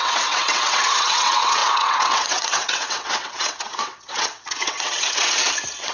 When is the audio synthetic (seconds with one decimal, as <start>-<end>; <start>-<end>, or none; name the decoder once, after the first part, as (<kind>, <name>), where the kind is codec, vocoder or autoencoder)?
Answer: 0.0-5.9 (vocoder, WaveNeXt)